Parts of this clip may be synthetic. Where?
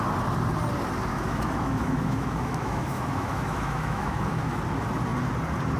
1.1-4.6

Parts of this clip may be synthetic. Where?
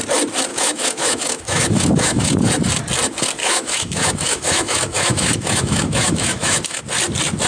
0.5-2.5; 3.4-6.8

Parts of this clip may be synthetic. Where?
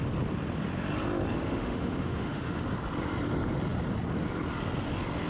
1.4-2.6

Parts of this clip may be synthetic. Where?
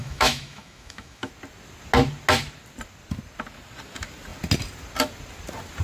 0.0-1.3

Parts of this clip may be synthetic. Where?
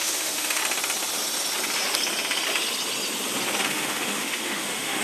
0.0-0.6; 3.6-5.0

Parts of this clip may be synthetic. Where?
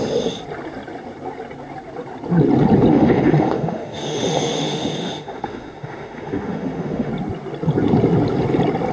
2.9-7.1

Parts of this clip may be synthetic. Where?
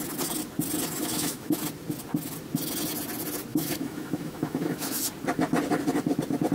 1.0-1.6; 3.5-5.0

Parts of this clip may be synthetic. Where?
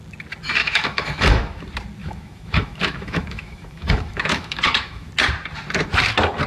0.6-1.6; 2.0-5.1